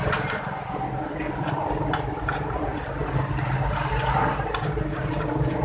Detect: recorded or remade remade